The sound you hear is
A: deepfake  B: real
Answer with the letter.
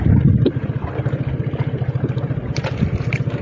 B